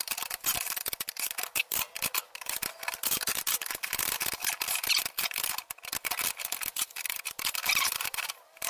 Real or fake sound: real